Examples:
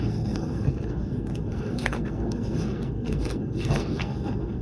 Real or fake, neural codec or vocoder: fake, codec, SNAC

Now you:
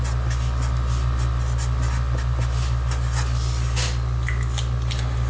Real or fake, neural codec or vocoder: real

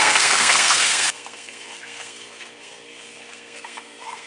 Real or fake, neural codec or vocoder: fake, codec, SNAC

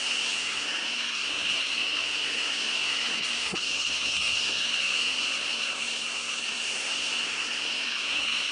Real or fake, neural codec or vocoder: fake, codec, SNAC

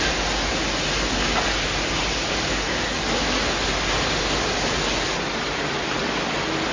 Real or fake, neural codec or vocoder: real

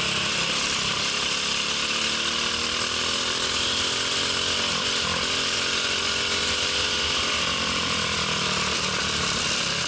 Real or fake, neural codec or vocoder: real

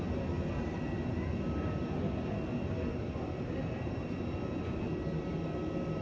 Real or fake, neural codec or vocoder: real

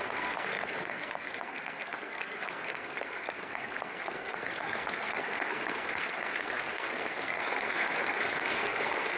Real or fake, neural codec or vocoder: fake, codec, SNAC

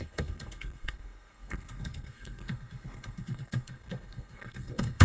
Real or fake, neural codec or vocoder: fake, codec, SNAC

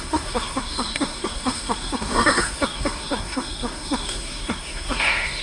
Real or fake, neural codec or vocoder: fake, codec, SNAC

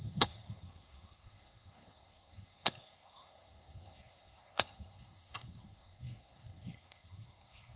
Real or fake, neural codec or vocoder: fake, codec, SNAC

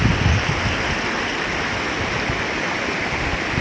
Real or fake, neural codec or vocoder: real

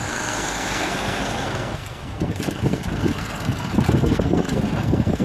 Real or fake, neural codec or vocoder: fake, codec, SNAC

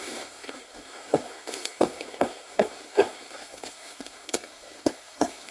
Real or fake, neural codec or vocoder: fake, codec, SNAC